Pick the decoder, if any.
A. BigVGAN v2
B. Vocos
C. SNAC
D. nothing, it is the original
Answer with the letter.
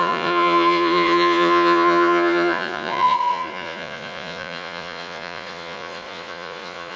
B